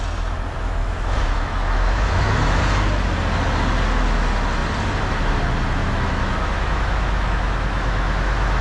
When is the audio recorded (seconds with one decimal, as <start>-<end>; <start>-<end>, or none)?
0.0-0.8; 2.6-5.8